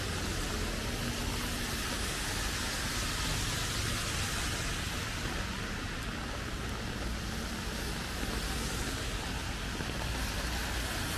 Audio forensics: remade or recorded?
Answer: recorded